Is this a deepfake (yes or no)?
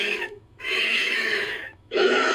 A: yes